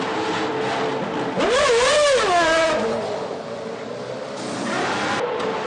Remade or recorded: recorded